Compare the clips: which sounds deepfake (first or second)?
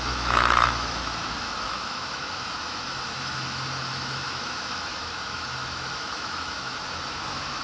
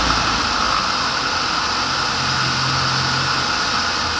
first